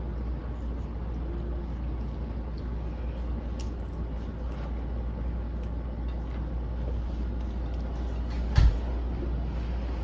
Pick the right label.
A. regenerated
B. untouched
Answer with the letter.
B